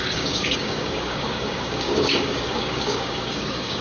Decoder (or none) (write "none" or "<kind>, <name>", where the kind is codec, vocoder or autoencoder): codec, DAC